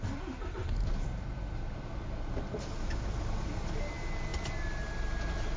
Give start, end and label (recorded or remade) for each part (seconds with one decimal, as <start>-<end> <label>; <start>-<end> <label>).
0.0-5.6 recorded